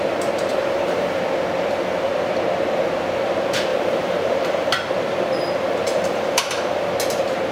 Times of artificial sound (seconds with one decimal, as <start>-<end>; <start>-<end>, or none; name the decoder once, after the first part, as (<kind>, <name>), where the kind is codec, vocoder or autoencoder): 0.5-1.2 (vocoder, BigVGAN v2); 3.7-4.9; 5.9-6.8